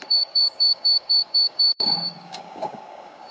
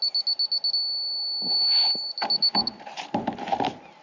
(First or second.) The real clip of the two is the second